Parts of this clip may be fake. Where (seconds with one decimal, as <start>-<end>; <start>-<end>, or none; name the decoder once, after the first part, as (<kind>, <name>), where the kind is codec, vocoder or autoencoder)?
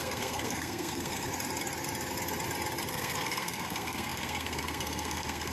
0.0-1.3 (codec, SNAC); 2.9-5.5